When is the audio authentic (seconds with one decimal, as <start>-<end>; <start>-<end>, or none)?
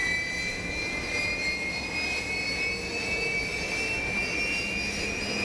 0.0-5.4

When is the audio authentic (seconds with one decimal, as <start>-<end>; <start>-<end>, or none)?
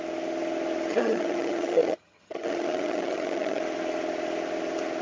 0.0-0.9; 3.6-5.0